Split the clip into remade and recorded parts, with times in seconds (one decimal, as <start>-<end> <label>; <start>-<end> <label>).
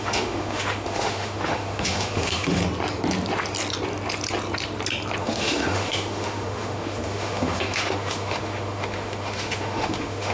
0.0-2.6 remade; 2.6-5.2 recorded; 5.2-10.3 remade